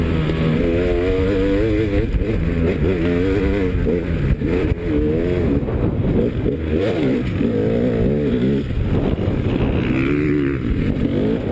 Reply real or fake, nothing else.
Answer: real